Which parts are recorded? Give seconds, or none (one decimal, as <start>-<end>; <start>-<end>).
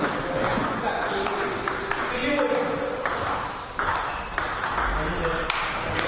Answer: 0.0-0.5; 1.1-6.1